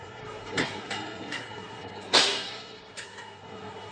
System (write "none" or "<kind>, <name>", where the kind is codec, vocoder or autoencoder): codec, SNAC